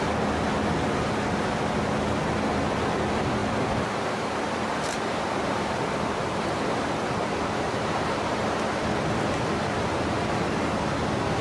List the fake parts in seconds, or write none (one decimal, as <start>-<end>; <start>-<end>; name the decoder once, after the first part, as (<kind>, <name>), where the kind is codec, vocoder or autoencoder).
3.4-8.6 (vocoder, BigVGAN v2)